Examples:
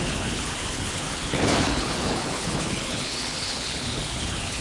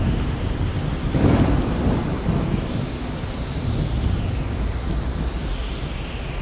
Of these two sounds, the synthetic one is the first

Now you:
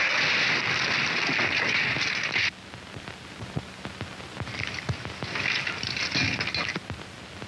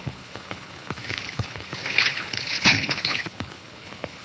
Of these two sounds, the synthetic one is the second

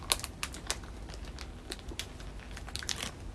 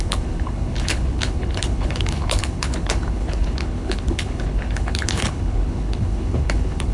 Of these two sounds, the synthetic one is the second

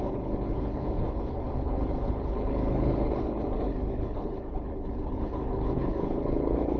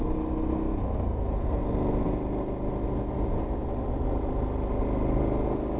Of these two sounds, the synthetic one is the first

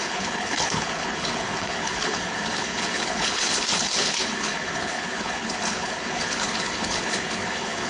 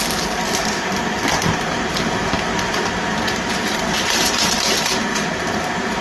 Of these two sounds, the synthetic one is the first